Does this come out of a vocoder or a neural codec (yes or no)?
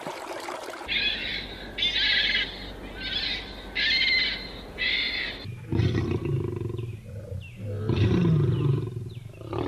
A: no